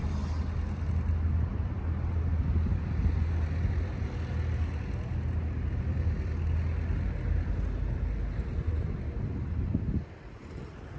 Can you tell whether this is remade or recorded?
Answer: recorded